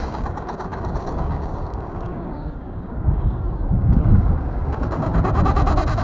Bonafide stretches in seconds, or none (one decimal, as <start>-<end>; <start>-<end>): 5.1-6.0